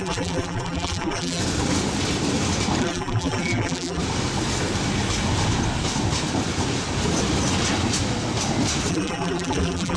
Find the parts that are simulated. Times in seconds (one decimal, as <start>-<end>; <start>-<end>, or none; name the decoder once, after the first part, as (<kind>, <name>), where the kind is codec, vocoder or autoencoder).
0.0-1.4 (vocoder, BigVGAN v2); 2.8-4.0; 8.9-10.0